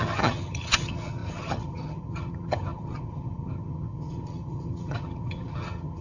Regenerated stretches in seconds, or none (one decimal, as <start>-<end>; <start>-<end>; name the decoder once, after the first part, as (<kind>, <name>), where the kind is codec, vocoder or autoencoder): 0.0-6.0 (vocoder, HiFi-GAN)